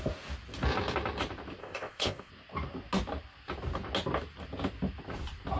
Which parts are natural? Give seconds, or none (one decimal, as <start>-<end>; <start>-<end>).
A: 0.0-1.6; 2.3-5.6

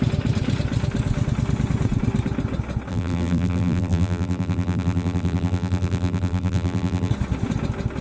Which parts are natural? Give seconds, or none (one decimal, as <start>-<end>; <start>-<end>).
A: 0.0-2.9; 7.1-8.0

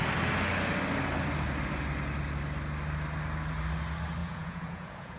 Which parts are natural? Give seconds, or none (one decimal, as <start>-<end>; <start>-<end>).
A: 0.0-4.2

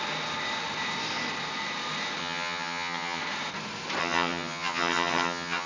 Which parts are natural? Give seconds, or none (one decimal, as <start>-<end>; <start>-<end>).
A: 0.0-2.2; 3.2-4.0